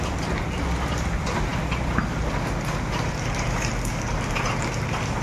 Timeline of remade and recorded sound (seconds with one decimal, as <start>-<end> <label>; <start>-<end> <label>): 0.0-5.2 recorded